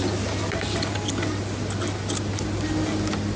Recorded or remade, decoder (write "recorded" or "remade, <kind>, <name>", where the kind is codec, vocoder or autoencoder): recorded